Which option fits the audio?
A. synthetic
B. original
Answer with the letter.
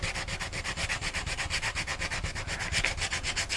B